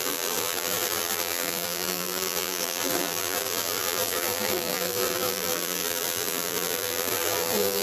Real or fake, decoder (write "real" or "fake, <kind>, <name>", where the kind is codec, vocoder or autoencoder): fake, vocoder, BigVGAN v2